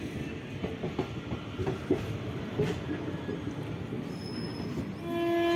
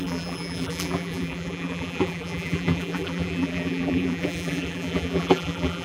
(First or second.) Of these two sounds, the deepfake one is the second